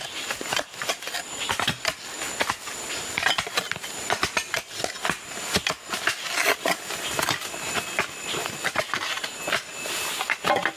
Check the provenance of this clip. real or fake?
real